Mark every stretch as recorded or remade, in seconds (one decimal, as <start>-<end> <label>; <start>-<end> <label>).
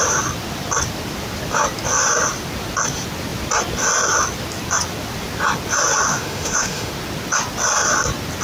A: 0.0-6.1 recorded; 6.1-6.9 remade; 6.9-8.4 recorded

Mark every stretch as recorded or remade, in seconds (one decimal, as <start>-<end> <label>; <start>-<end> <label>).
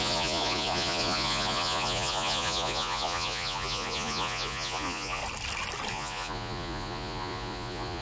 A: 0.0-5.2 remade; 5.2-5.9 recorded; 5.9-8.0 remade